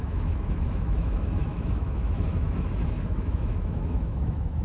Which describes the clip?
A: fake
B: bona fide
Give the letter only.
A